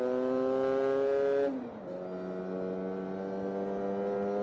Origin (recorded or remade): recorded